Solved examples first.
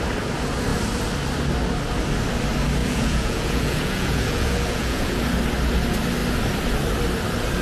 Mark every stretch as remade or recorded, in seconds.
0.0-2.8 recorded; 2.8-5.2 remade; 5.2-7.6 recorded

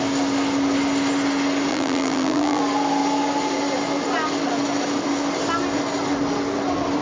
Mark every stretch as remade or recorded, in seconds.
0.0-1.7 recorded; 1.7-2.6 remade; 2.6-7.0 recorded

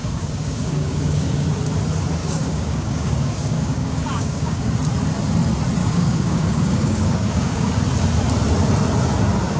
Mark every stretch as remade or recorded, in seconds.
0.0-1.5 remade; 1.5-2.2 recorded; 2.2-4.8 remade; 4.8-5.8 recorded; 5.8-7.7 remade; 7.7-9.6 recorded

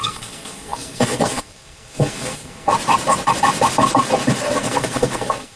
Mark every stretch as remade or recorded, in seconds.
0.0-2.7 remade; 2.7-4.6 recorded; 4.6-5.6 remade

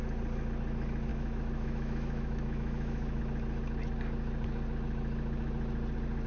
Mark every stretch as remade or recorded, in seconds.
0.0-1.1 recorded; 1.1-3.2 remade; 3.2-6.3 recorded

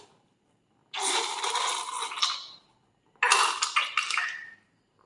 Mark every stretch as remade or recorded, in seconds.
0.0-0.8 remade; 0.8-3.9 recorded; 3.9-5.1 remade

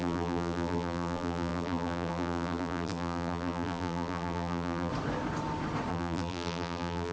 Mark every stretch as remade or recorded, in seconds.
0.0-4.9 remade; 4.9-5.9 recorded; 5.9-7.1 remade

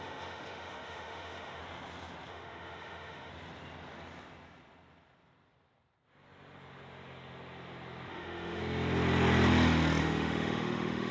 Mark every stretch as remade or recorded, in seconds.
0.0-1.6 remade; 1.6-2.3 recorded; 2.3-3.3 remade; 3.3-8.1 recorded; 8.1-8.6 remade; 8.6-10.0 recorded; 10.0-11.1 remade